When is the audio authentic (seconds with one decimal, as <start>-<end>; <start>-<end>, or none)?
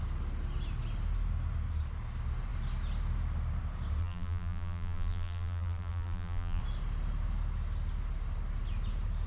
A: 0.0-4.0; 6.6-9.3